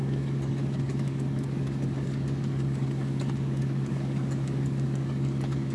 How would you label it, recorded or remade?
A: remade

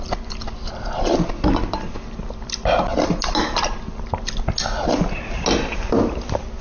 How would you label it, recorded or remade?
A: recorded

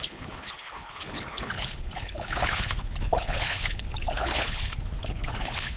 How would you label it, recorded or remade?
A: remade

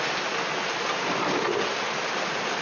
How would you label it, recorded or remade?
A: recorded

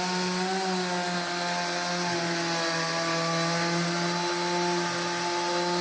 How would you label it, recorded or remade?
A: recorded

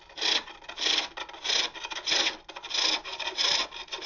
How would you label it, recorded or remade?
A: recorded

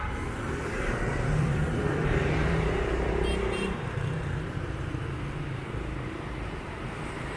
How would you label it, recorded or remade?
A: remade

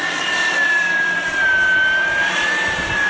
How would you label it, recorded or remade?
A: recorded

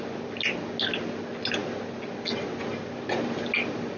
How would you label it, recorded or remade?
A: recorded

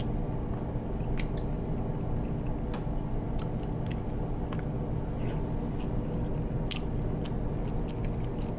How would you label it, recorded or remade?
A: recorded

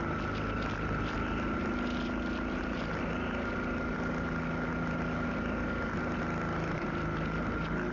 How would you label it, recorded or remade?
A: recorded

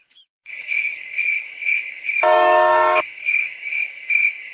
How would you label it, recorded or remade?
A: remade